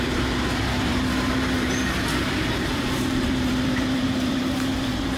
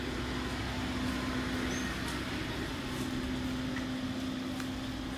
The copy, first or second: first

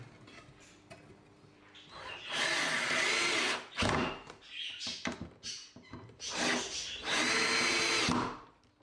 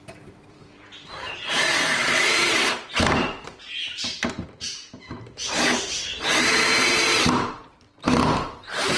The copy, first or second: second